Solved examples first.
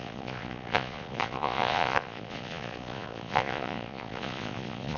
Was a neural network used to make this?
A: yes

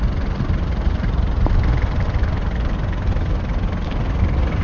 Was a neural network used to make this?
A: no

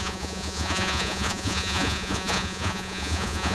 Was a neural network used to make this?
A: yes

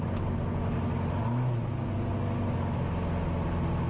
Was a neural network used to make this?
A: no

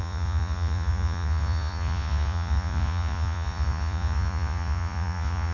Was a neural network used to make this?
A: yes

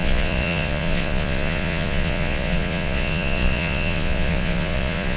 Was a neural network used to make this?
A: yes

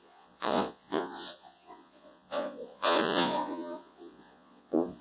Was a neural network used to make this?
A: yes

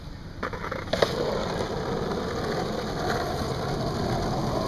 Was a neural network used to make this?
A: no